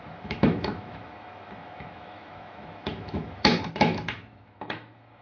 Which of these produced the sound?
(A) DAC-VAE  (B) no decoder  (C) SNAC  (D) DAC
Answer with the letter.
A